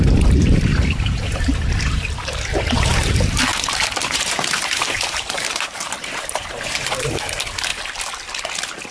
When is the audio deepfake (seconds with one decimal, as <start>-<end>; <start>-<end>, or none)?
0.0-3.5; 4.0-7.7